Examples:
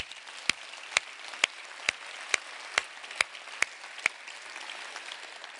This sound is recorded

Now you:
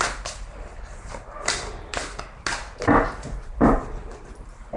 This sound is recorded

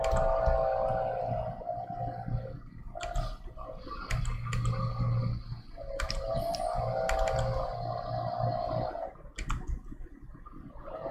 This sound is recorded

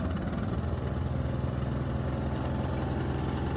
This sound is recorded